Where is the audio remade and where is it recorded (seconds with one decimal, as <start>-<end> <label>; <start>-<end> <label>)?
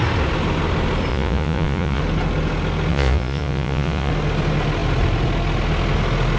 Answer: 0.0-1.1 recorded; 1.1-2.0 remade; 2.0-2.9 recorded; 2.9-4.1 remade; 4.1-6.4 recorded